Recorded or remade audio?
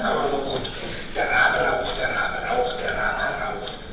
recorded